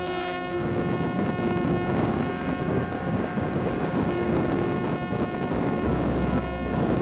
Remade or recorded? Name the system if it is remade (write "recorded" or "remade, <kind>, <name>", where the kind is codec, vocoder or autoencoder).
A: remade, codec, DAC